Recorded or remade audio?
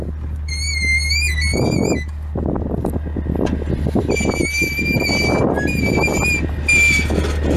recorded